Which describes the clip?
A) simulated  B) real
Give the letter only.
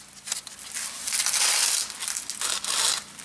B